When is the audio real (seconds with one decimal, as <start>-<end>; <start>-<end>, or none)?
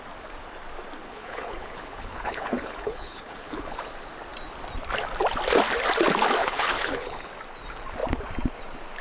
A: 0.0-1.0; 3.8-6.4; 7.3-9.0